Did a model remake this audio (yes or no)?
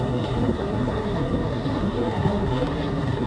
yes